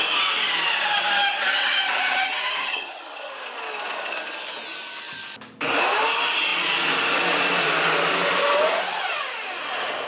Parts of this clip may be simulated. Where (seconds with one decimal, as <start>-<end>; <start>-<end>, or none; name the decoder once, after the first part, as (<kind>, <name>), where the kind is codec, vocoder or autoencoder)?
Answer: 1.5-3.3 (vocoder, HiFi-GAN)